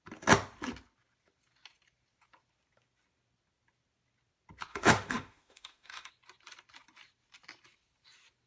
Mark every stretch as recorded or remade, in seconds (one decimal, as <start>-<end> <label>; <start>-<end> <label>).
0.0-4.7 recorded; 4.7-6.1 remade; 6.1-8.5 recorded